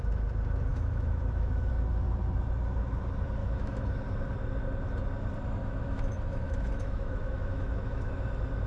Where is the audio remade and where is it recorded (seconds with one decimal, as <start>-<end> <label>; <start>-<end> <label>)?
0.0-0.7 recorded; 0.7-1.7 remade; 1.7-3.4 recorded; 3.4-3.9 remade; 3.9-5.6 recorded; 5.6-8.1 remade; 8.1-8.7 recorded